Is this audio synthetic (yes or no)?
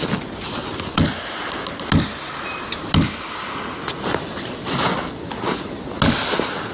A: no